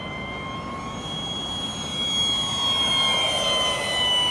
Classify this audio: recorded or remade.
recorded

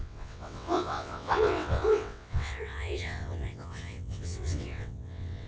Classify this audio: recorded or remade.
remade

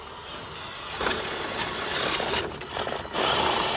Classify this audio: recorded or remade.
remade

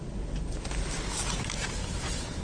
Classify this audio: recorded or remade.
recorded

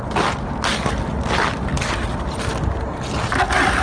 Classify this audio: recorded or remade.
recorded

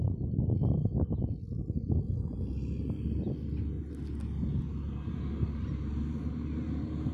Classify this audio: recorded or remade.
recorded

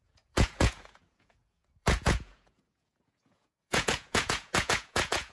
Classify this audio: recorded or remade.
remade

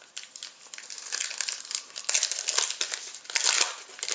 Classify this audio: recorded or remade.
recorded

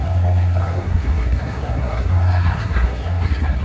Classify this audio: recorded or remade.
remade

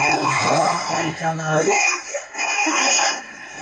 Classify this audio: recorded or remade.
remade